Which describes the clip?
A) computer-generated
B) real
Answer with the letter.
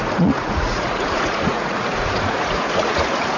A